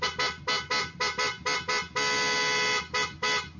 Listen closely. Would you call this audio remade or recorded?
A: recorded